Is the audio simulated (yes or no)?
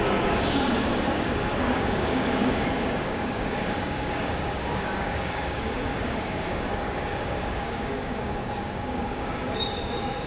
yes